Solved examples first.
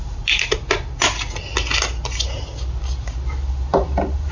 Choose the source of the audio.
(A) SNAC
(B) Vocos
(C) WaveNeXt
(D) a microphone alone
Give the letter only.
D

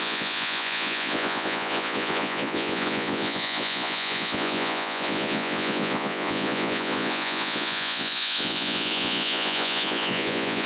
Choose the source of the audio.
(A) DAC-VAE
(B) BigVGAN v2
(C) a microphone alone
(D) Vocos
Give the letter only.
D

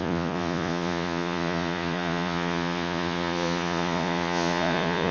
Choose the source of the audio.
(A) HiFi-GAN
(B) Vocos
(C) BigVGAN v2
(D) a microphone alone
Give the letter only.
B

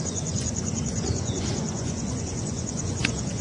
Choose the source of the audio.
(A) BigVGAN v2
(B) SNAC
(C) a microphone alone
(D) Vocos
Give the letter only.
D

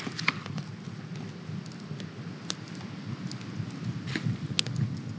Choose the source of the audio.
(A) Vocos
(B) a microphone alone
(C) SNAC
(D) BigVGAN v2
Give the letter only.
B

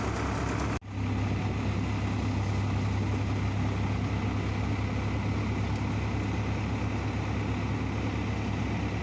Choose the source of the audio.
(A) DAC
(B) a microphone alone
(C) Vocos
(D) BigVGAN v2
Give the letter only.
B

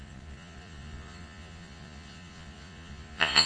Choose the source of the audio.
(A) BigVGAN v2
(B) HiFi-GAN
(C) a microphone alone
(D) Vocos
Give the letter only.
D